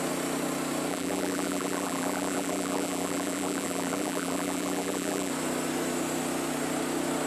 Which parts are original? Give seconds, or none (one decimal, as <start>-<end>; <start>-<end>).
0.0-0.9; 5.3-7.3